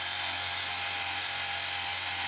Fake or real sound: real